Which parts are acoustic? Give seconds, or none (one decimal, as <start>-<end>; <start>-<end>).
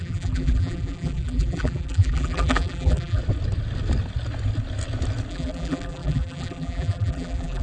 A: 3.2-5.3